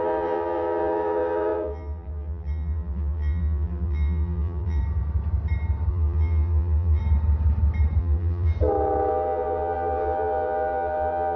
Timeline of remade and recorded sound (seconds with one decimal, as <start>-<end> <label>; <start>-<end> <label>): 0.0-4.8 remade; 4.8-5.9 recorded; 5.9-7.0 remade; 7.0-8.0 recorded; 8.0-8.5 remade; 8.5-9.1 recorded; 9.1-11.4 remade